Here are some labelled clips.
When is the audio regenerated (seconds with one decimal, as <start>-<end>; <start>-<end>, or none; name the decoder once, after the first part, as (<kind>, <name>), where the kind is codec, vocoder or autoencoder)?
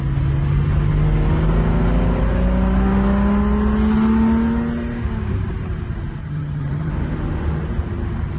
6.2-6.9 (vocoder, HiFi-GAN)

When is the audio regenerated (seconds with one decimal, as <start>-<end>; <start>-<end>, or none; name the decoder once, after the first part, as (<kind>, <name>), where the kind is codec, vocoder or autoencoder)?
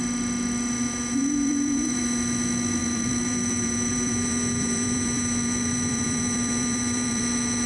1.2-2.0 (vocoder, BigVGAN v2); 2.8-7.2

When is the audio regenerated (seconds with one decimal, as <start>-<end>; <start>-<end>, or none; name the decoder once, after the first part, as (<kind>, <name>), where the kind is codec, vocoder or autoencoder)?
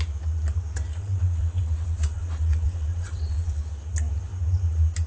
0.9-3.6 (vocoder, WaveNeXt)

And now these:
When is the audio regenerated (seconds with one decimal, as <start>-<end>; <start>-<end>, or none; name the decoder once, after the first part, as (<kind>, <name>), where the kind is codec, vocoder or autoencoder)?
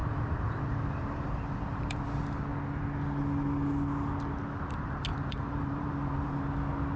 0.0-2.0 (vocoder, BigVGAN v2); 5.1-6.4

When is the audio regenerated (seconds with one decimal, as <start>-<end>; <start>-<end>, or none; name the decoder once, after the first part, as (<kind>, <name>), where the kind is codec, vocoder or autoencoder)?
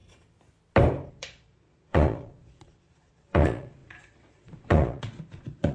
1.1-5.7 (vocoder, Vocos)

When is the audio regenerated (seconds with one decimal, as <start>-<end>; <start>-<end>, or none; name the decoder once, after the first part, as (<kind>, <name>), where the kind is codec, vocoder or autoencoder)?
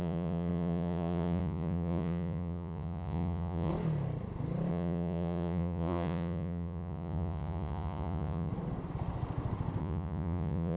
0.0-3.7 (vocoder, Vocos); 4.7-8.5; 9.8-10.8